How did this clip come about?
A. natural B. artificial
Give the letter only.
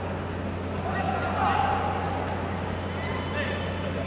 A